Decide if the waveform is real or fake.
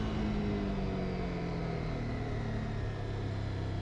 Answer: real